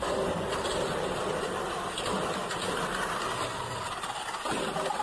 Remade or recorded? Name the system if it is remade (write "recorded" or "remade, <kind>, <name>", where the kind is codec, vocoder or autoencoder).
recorded